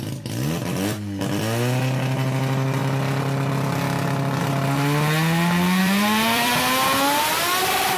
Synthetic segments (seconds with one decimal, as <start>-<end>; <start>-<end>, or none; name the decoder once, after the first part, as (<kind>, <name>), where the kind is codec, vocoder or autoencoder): 5.8-8.0 (vocoder, BigVGAN v2)